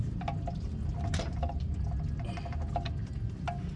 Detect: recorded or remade recorded